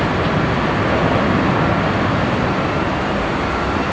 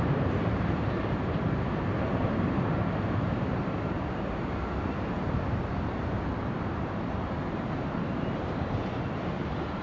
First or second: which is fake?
second